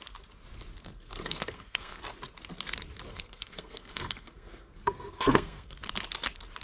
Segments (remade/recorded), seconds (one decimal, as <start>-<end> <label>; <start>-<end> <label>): 0.0-0.8 recorded; 0.8-2.0 remade; 2.0-3.1 recorded; 3.1-5.8 remade; 5.8-6.6 recorded